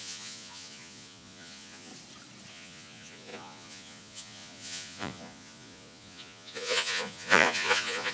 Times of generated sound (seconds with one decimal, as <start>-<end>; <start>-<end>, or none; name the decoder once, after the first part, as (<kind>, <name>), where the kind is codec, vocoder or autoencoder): 0.0-1.9 (vocoder, Vocos); 2.5-8.1